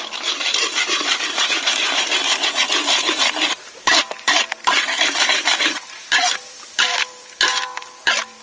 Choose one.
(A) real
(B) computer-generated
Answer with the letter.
B